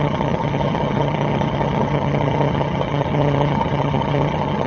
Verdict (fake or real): fake